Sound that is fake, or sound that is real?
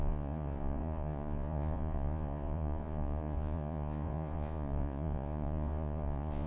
fake